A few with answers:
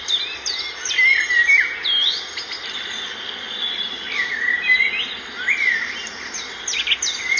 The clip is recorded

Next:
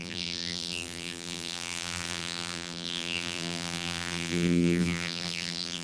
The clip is remade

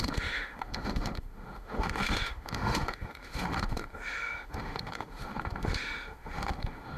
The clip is remade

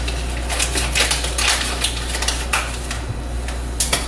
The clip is recorded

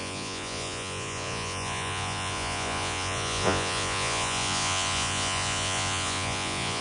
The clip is remade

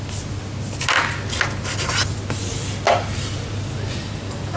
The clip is recorded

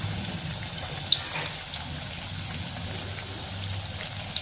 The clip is recorded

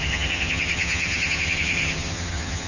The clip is remade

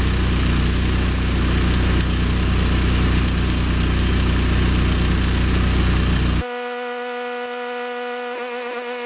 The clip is recorded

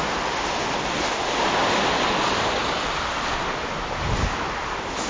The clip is recorded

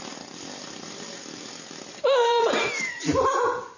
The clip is remade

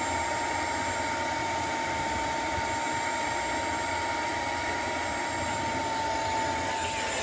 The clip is recorded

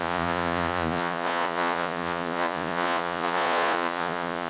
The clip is remade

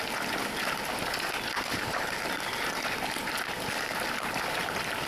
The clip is recorded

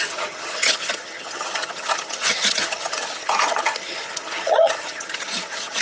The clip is remade